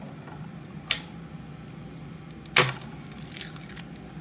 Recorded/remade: recorded